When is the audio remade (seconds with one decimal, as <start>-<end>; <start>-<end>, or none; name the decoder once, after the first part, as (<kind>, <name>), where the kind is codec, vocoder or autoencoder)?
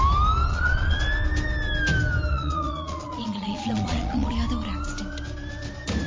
0.5-1.0 (vocoder, Vocos); 2.3-4.3